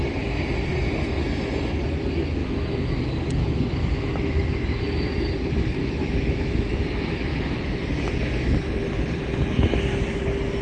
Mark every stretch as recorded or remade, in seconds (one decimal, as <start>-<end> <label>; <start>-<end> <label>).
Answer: 0.0-2.4 recorded; 2.4-5.3 remade; 5.3-5.8 recorded; 5.8-7.6 remade; 7.6-10.6 recorded